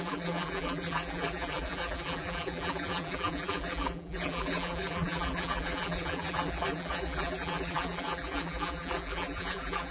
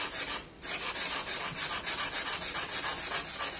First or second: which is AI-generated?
first